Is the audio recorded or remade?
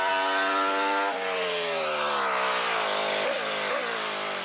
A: recorded